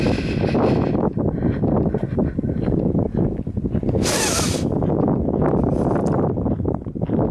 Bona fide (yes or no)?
yes